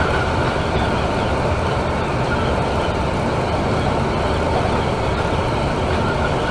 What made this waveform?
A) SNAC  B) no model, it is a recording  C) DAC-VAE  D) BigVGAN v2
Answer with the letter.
B